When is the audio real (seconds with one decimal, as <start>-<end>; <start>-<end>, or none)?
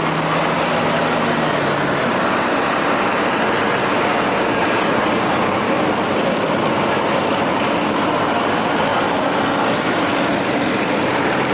0.0-3.8; 5.3-11.5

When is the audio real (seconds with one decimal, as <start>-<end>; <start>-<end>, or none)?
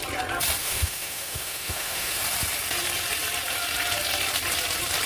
0.0-0.6; 2.2-5.1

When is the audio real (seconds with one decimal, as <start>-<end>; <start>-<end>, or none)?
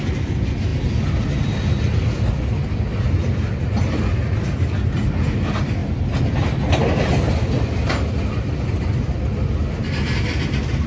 0.0-10.9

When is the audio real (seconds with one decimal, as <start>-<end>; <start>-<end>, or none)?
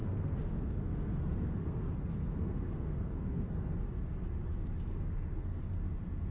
3.8-4.9; 5.6-6.3